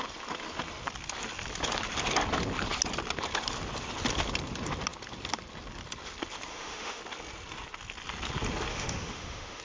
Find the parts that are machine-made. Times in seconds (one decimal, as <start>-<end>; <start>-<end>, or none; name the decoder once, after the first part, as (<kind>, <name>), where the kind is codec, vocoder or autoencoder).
6.5-7.0 (autoencoder, DAC-VAE); 8.7-9.6